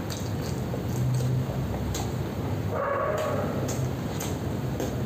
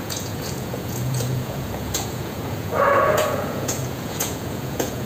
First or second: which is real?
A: first